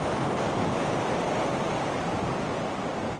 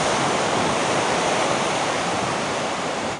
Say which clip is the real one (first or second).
first